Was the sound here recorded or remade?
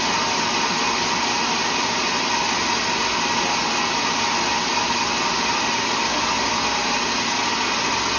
recorded